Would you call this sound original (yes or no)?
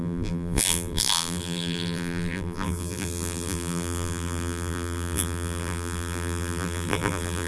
no